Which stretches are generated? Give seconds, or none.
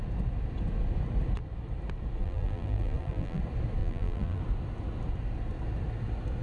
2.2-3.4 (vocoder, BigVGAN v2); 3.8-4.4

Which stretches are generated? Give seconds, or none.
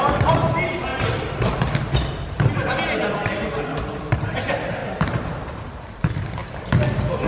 4.8-6.0 (vocoder, BigVGAN v2)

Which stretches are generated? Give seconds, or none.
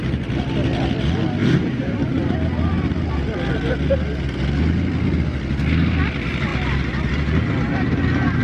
1.4-2.1 (vocoder, BigVGAN v2); 6.5-7.5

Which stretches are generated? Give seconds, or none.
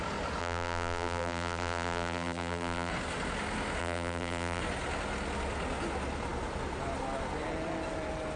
0.4-2.9 (vocoder, BigVGAN v2); 3.8-4.6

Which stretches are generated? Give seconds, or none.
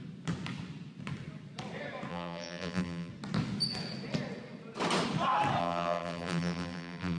2.1-3.1 (vocoder, BigVGAN v2); 5.6-7.2